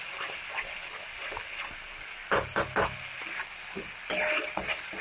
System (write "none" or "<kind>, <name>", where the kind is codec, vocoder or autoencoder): none